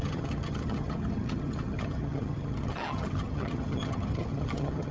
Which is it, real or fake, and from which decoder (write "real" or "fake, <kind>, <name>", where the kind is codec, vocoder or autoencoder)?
fake, vocoder, HiFi-GAN